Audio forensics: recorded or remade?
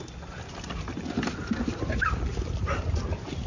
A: recorded